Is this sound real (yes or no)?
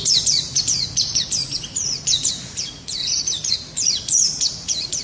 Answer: no